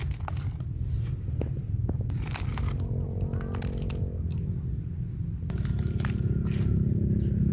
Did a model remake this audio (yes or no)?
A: no